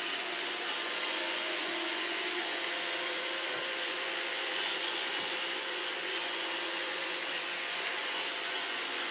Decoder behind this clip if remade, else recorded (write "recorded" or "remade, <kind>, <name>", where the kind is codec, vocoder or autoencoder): remade, vocoder, Vocos